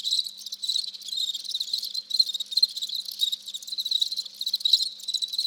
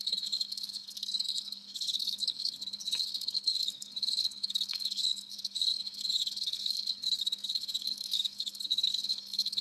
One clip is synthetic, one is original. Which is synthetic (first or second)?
second